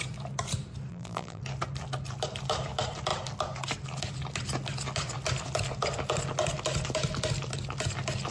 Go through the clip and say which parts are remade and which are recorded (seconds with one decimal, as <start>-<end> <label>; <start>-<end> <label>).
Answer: 0.0-0.9 recorded; 0.9-1.4 remade; 1.4-8.3 recorded